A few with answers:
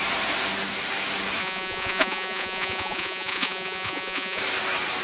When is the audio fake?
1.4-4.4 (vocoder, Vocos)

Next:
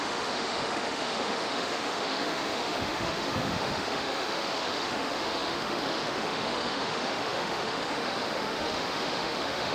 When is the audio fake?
0.0-9.7 (autoencoder, DAC-VAE)

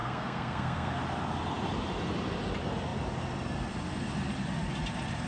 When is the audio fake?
0.0-1.0 (codec, SNAC)